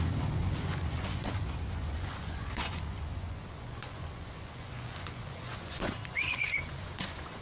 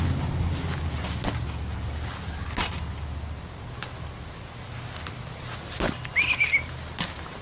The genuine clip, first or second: second